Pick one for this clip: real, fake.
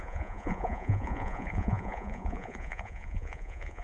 fake